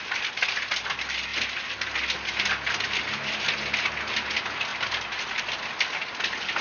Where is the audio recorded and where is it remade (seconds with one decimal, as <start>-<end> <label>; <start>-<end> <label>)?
0.0-6.6 recorded